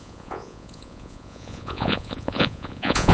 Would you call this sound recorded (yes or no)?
no